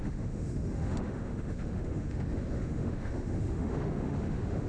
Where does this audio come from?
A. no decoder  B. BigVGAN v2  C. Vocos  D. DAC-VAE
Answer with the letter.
D